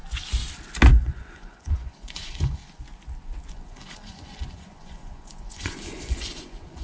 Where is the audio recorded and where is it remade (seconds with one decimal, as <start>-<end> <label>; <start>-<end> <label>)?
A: 0.0-0.9 recorded; 0.9-2.6 remade; 2.6-3.5 recorded; 3.5-6.8 remade